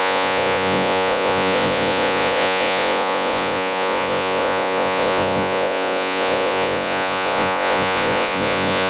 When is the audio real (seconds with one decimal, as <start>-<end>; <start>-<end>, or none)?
none